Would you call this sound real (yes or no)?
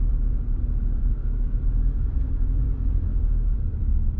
no